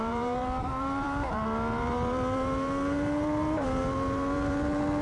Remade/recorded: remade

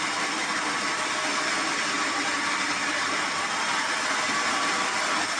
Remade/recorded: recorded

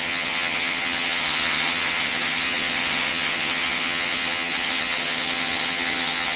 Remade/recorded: remade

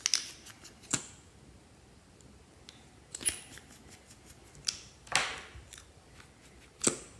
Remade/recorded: recorded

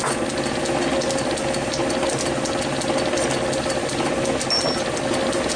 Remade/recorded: recorded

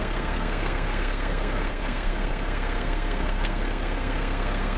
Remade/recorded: remade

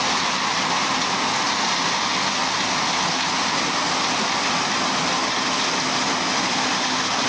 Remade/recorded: recorded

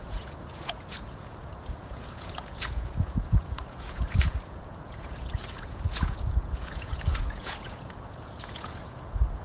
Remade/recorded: remade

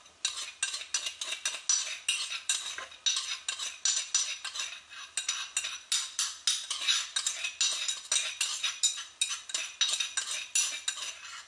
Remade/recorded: recorded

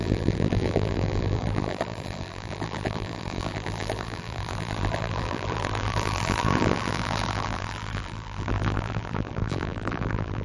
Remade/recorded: remade